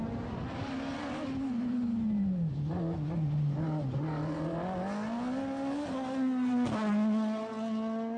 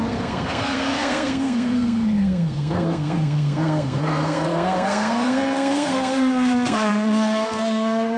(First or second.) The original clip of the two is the first